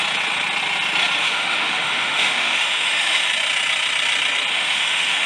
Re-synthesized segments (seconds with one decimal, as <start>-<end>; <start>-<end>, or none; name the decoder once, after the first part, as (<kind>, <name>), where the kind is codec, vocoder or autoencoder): 1.2-3.3 (autoencoder, DAC-VAE); 4.5-5.3